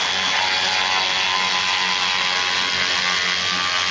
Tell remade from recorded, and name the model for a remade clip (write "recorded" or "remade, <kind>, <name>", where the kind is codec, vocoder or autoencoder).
recorded